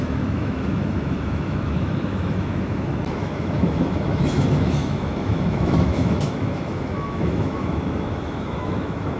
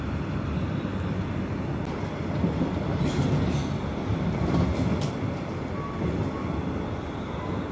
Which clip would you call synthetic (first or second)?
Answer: first